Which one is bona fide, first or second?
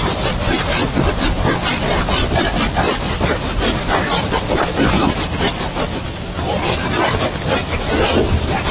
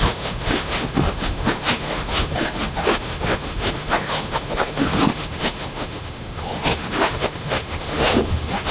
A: first